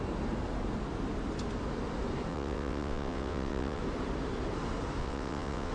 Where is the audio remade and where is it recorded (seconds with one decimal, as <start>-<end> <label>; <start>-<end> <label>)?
0.0-2.3 recorded; 2.3-3.8 remade; 3.8-5.0 recorded; 5.0-5.7 remade